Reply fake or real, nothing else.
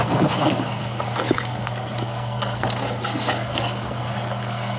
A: fake